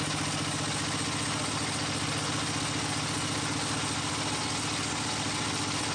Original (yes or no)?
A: yes